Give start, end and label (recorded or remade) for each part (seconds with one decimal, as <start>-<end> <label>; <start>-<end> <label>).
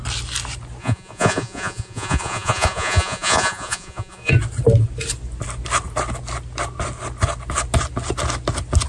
0.0-0.8 recorded; 0.8-4.3 remade; 4.3-8.9 recorded